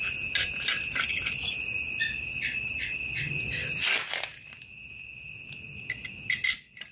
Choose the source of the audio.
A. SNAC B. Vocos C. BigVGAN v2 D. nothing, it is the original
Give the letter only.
D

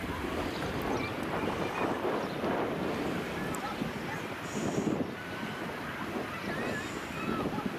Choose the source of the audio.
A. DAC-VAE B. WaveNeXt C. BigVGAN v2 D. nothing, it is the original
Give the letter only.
D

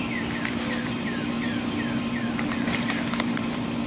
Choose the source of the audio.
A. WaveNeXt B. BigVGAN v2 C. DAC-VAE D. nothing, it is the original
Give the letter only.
B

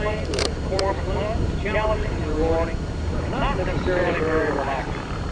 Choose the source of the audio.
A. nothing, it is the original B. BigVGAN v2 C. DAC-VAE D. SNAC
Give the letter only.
B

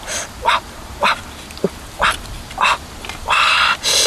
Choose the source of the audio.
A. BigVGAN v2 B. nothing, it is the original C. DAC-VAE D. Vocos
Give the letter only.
B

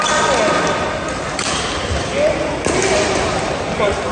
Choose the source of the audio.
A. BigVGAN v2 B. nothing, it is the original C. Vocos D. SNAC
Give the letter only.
B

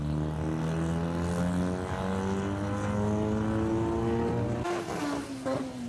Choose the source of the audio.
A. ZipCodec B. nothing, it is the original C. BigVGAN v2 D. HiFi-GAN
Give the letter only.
B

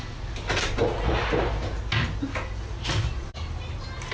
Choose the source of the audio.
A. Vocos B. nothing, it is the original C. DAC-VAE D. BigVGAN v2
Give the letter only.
B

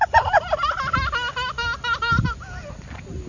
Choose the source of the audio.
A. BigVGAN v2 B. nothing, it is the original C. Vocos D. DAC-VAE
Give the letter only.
B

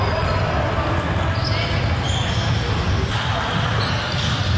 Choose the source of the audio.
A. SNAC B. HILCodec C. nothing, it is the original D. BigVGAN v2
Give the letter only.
C